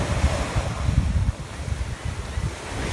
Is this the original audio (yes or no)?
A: yes